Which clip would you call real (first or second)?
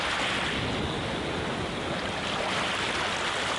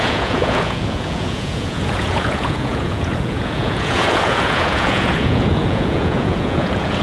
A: first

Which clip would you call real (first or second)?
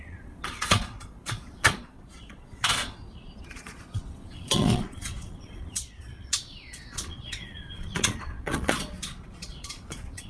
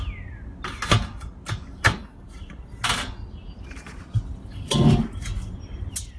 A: second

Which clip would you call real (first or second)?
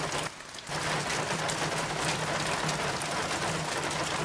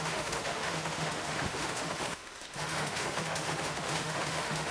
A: first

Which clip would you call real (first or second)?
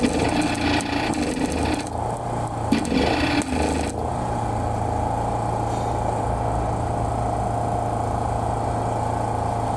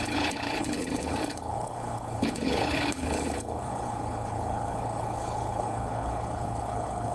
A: first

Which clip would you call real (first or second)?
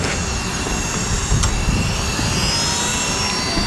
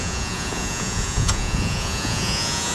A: first